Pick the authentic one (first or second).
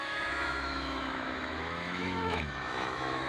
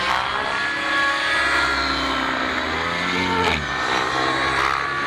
second